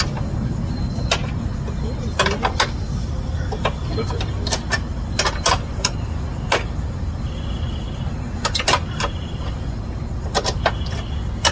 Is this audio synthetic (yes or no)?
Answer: no